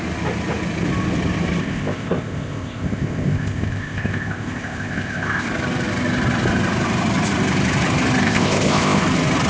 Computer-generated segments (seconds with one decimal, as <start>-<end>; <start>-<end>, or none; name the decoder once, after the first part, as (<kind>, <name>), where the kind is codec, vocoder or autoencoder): 1.6-5.5 (codec, ZipCodec); 8.2-9.0